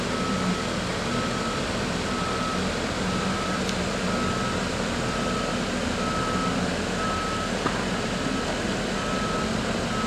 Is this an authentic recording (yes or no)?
yes